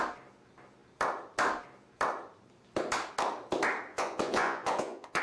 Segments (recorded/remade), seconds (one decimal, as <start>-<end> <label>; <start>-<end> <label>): 0.0-3.9 recorded; 3.9-5.2 remade